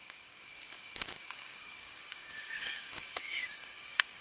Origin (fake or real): fake